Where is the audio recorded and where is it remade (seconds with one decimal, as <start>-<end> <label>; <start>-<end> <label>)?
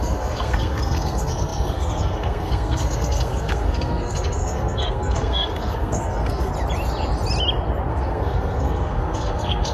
0.0-6.5 remade; 6.5-7.9 recorded; 7.9-9.7 remade